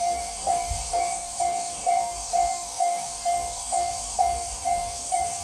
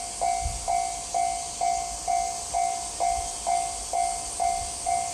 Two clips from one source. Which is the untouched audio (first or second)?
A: second